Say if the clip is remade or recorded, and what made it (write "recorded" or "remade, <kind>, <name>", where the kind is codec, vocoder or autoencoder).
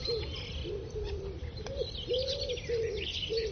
recorded